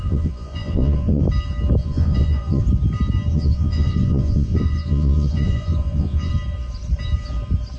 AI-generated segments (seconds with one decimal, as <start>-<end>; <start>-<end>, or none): 0.0-1.2; 1.8-2.6; 3.3-6.3